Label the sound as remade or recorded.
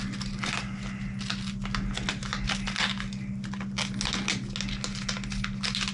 recorded